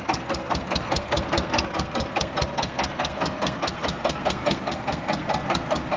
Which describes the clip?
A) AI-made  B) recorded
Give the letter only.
A